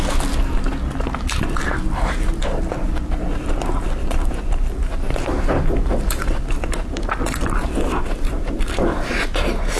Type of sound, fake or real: real